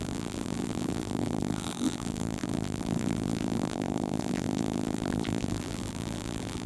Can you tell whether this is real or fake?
fake